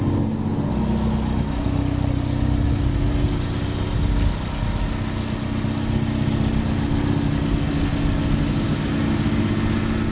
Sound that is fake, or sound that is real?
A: real